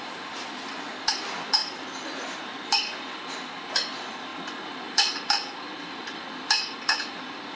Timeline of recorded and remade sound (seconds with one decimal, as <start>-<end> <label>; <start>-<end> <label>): 0.0-7.6 remade